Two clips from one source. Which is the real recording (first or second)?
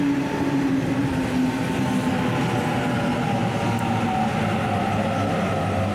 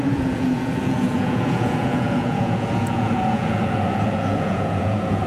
first